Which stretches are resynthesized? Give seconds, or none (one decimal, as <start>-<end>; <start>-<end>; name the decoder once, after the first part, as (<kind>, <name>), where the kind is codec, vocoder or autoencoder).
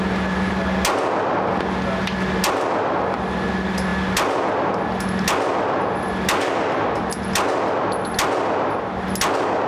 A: none